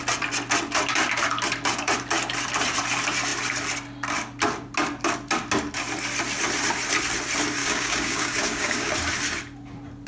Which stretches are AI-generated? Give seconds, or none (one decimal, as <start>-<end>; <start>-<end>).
7.6-8.9